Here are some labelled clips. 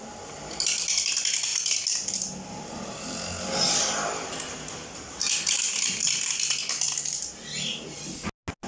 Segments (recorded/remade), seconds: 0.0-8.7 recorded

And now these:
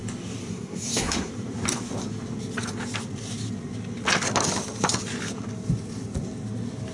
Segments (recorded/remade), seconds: 0.0-0.5 recorded; 0.5-1.3 remade; 1.3-6.9 recorded

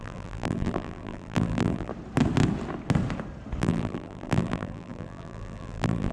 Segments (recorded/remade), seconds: 0.0-1.9 remade; 1.9-3.6 recorded; 3.6-6.1 remade

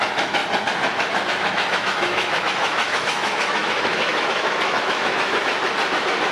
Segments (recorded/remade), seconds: 0.0-0.4 remade; 0.4-1.5 recorded; 1.5-5.6 remade; 5.6-6.3 recorded

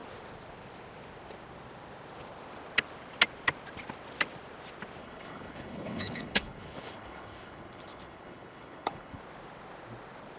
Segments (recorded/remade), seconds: 0.0-5.0 recorded; 5.0-9.2 remade; 9.2-10.4 recorded

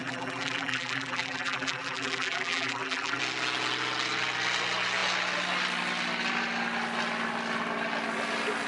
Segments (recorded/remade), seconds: 0.0-3.2 remade; 3.2-8.7 recorded

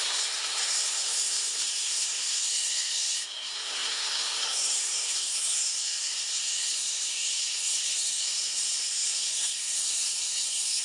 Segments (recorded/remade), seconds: 0.0-10.8 remade

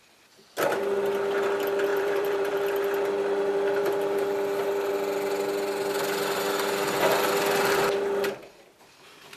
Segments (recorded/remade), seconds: 0.0-1.9 recorded; 1.9-2.5 remade; 2.5-9.4 recorded